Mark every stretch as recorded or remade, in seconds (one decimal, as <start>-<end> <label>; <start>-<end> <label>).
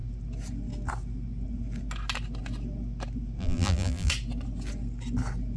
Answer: 0.0-3.4 recorded; 3.4-4.1 remade; 4.1-5.6 recorded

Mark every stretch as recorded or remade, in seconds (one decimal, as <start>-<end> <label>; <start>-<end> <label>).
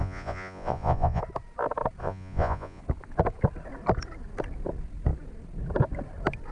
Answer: 0.0-1.2 remade; 1.2-2.0 recorded; 2.0-2.8 remade; 2.8-6.5 recorded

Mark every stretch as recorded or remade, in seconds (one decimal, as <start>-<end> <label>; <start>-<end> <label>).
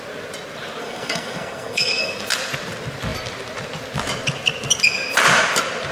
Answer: 0.0-0.8 recorded; 0.8-2.1 remade; 2.1-5.9 recorded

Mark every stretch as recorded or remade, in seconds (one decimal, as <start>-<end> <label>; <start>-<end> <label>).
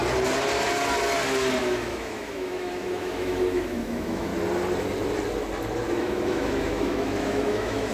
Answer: 0.0-1.6 recorded; 1.6-4.3 remade; 4.3-5.9 recorded; 5.9-7.9 remade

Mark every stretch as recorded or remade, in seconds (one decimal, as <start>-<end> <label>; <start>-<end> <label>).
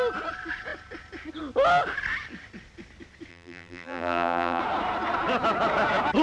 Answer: 0.0-3.3 recorded; 3.3-4.6 remade; 4.6-6.2 recorded